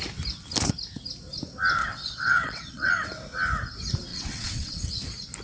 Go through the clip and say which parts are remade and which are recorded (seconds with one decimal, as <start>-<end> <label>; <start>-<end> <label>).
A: 0.0-1.8 recorded; 1.8-2.9 remade; 2.9-4.1 recorded; 4.1-4.9 remade; 4.9-5.4 recorded